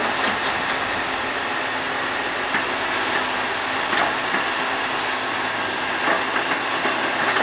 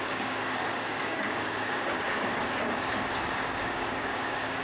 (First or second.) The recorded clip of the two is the first